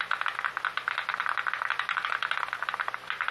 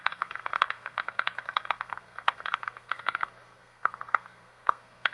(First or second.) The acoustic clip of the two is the first